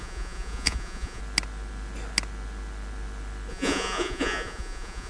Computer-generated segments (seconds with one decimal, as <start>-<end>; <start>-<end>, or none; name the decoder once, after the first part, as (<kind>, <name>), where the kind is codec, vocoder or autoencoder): 0.0-1.2 (vocoder, Vocos); 3.5-5.1